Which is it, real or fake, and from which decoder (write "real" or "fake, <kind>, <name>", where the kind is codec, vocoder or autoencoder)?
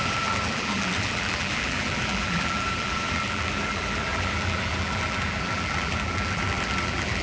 fake, vocoder, BigVGAN v2